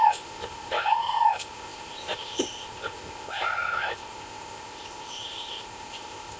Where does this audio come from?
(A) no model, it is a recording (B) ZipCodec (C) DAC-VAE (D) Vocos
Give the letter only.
B